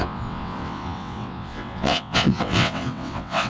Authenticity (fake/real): fake